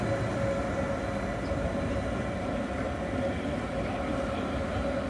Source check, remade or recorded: recorded